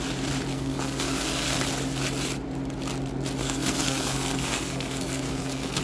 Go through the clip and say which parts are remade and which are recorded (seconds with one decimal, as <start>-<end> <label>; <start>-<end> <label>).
0.0-0.5 recorded; 0.5-1.6 remade; 1.6-3.4 recorded; 3.4-5.8 remade